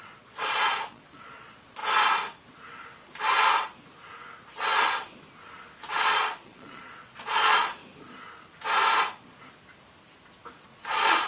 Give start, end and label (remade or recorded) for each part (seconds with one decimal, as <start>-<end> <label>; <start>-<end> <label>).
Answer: 0.0-1.8 remade; 1.8-5.8 recorded; 5.8-7.8 remade; 7.8-10.6 recorded; 10.6-11.3 remade